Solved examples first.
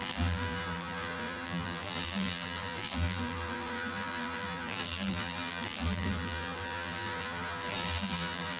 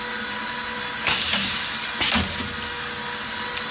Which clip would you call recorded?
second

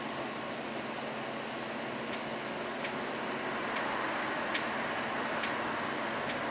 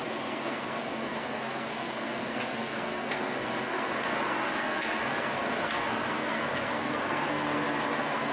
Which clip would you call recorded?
first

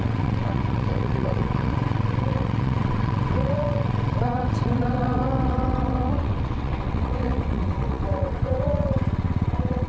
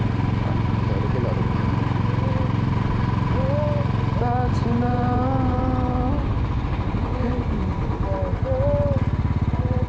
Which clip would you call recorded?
second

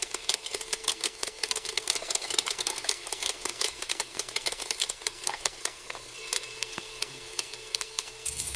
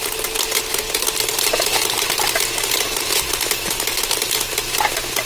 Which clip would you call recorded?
second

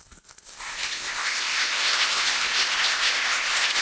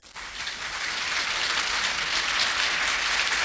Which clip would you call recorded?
second